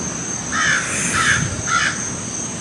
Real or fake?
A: real